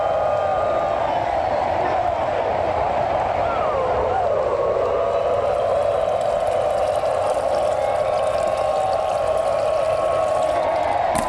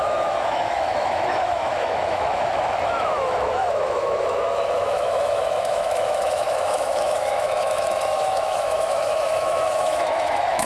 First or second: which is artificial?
second